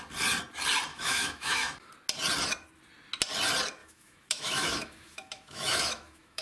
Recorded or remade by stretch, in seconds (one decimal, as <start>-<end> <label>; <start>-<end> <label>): 0.0-0.9 recorded; 0.9-1.9 remade; 1.9-3.8 recorded; 3.8-6.4 remade